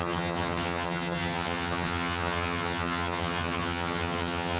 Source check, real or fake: fake